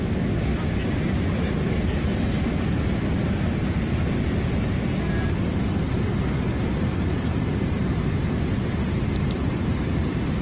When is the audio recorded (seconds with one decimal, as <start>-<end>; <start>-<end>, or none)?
0.0-10.4